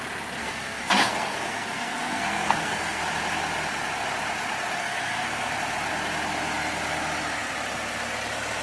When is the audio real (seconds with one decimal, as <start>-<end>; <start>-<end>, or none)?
0.0-0.4; 3.0-4.8; 5.5-8.6